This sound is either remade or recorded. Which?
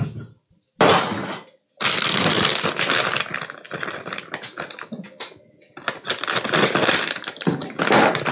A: recorded